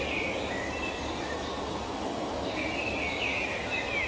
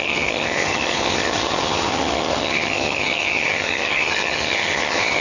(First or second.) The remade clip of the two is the second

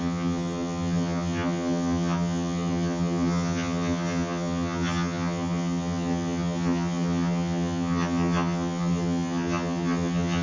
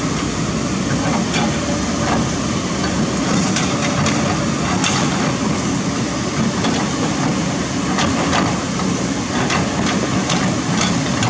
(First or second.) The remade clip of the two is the first